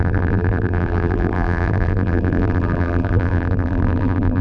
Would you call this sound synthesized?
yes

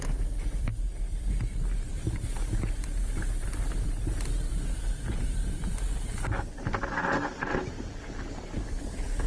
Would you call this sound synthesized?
no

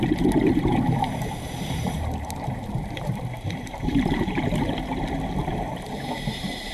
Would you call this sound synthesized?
yes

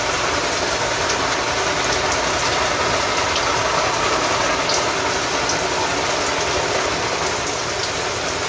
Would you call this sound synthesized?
no